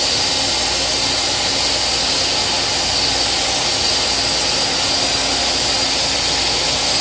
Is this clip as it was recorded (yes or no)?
yes